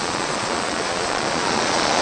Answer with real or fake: fake